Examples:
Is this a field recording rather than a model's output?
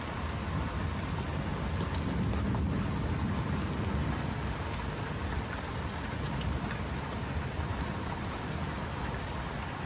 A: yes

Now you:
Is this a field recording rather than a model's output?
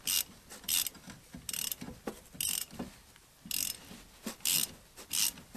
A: yes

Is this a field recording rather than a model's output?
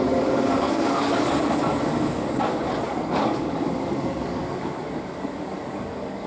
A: no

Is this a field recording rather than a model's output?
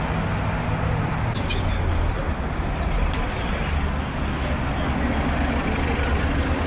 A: yes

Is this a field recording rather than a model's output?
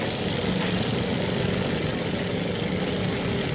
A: yes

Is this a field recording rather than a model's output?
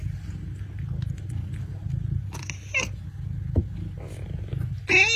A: yes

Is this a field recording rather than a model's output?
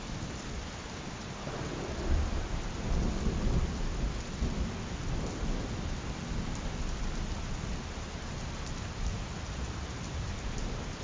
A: yes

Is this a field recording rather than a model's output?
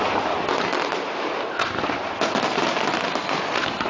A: yes